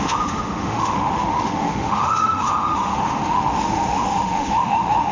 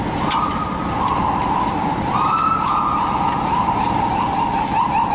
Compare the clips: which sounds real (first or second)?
second